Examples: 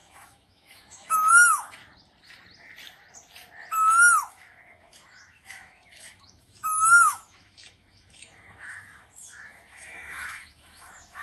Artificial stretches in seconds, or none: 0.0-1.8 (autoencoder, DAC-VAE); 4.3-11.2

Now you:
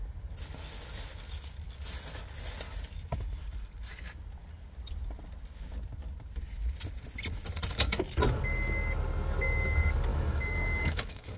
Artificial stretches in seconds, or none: 10.1-11.4 (autoencoder, DAC-VAE)

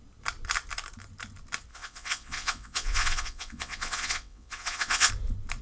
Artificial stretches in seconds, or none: 1.7-5.1 (vocoder, WaveNeXt)